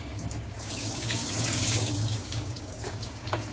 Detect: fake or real fake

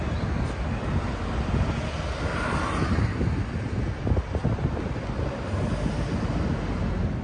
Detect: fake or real real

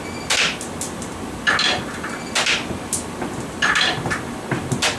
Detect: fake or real real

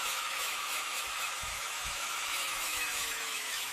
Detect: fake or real fake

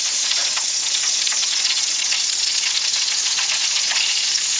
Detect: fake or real fake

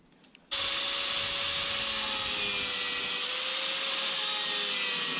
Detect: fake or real real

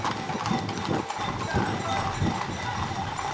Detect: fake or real real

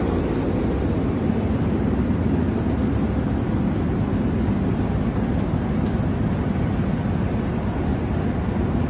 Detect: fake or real real